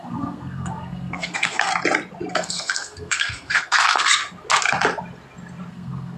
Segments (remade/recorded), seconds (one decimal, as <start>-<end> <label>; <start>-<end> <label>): 0.0-1.7 remade; 1.7-2.3 recorded; 2.3-4.2 remade; 4.2-5.7 recorded; 5.7-6.2 remade